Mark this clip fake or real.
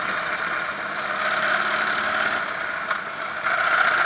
real